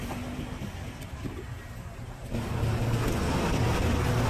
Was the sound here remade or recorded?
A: recorded